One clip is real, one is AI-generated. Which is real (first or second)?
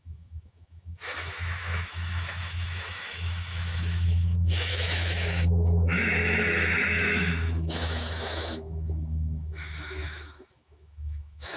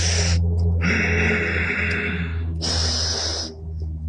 second